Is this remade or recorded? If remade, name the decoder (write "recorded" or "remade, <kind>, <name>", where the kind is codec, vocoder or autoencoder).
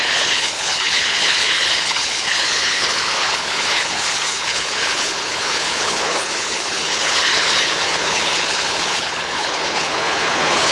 remade, codec, HILCodec